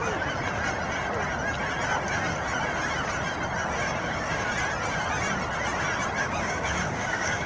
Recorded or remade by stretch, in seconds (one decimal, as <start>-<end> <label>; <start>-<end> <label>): 0.0-4.0 recorded; 4.0-4.5 remade; 4.5-6.2 recorded; 6.2-7.5 remade